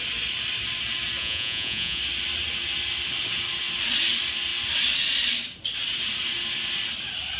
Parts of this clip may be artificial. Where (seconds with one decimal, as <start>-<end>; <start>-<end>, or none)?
1.2-2.0